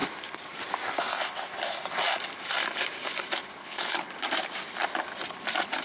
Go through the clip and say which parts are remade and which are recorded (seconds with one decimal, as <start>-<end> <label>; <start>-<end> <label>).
0.0-3.6 recorded; 3.6-4.1 remade; 4.1-5.8 recorded